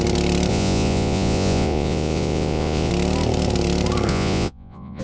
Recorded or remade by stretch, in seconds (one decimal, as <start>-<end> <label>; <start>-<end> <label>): 0.0-0.5 recorded; 0.5-2.9 remade; 2.9-4.1 recorded; 4.1-5.0 remade